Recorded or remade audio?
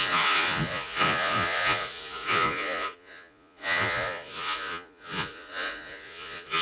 remade